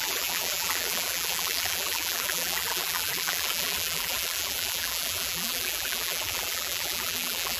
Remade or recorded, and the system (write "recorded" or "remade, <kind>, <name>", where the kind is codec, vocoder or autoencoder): remade, vocoder, BigVGAN v2